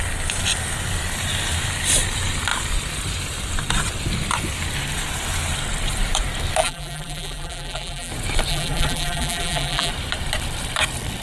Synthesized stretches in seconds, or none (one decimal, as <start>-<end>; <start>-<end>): 6.6-8.1; 8.5-9.9